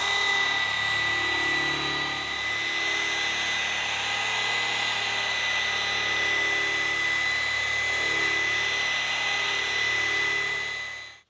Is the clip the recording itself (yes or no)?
yes